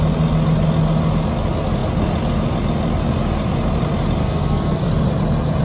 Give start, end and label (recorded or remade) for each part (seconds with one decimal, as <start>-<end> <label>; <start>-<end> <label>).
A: 0.0-4.2 recorded; 4.2-4.9 remade; 4.9-5.6 recorded